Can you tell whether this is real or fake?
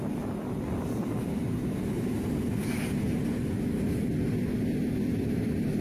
real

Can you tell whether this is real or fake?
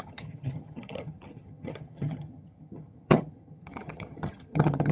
fake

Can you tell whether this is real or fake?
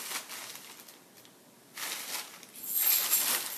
real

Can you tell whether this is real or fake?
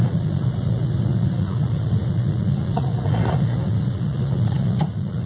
fake